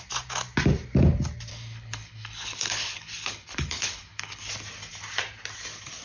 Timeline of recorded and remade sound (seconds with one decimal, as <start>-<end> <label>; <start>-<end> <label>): 0.0-1.5 recorded; 1.5-4.5 remade; 4.5-6.0 recorded